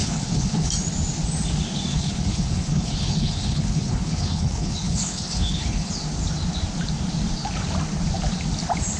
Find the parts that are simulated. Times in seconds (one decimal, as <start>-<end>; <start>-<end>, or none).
0.0-0.7; 1.9-5.9